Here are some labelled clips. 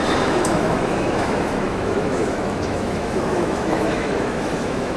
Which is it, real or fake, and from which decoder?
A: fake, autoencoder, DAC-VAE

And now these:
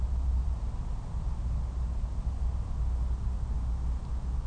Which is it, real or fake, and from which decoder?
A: real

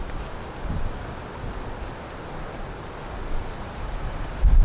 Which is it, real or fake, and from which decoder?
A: real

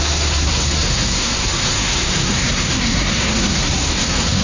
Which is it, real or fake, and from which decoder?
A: fake, codec, SNAC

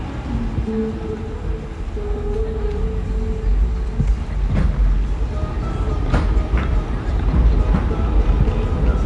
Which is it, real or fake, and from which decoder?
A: real